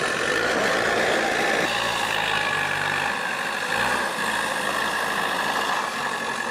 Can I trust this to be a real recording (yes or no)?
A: yes